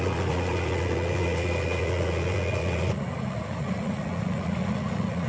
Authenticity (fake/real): fake